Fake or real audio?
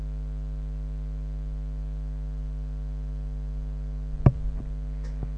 real